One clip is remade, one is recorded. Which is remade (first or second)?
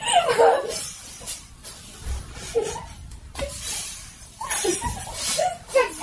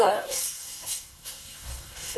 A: second